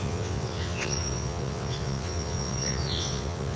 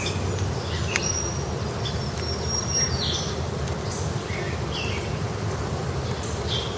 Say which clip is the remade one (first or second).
first